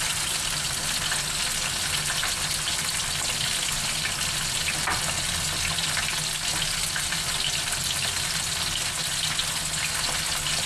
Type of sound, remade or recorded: recorded